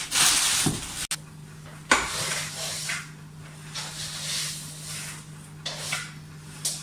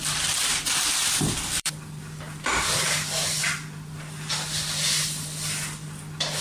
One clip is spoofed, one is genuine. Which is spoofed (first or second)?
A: second